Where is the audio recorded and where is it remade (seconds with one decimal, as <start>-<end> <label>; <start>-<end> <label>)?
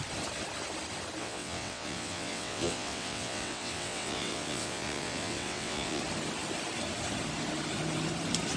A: 0.0-1.2 recorded; 1.2-6.0 remade; 6.0-8.6 recorded